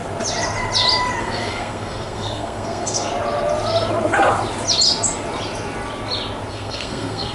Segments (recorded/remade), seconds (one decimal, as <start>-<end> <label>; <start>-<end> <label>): 0.0-1.2 recorded; 1.2-3.1 remade; 3.1-6.5 recorded; 6.5-7.3 remade